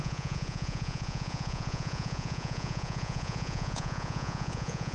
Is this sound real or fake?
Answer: fake